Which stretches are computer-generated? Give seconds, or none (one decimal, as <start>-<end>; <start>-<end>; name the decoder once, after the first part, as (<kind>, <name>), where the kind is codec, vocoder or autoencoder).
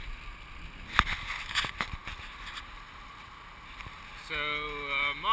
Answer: none